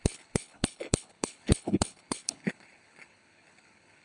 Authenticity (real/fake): fake